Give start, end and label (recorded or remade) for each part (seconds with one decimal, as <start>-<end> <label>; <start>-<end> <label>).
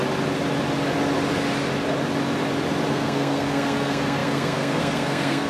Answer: 0.0-2.9 recorded; 2.9-5.5 remade